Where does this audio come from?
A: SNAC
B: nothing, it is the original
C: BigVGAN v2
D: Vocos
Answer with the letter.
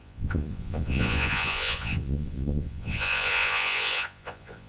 D